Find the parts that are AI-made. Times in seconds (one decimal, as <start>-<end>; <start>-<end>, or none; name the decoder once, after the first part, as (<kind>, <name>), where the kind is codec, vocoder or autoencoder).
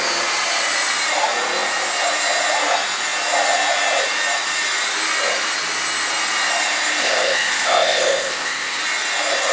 7.0-8.8 (codec, ZipCodec)